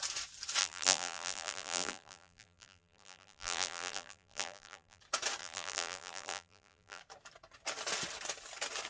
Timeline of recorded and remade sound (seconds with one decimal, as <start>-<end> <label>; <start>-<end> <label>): 0.0-0.6 recorded; 0.6-5.0 remade; 5.0-5.4 recorded; 5.4-7.0 remade; 7.0-8.9 recorded